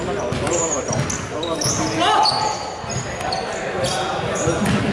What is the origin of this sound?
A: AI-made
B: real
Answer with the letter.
B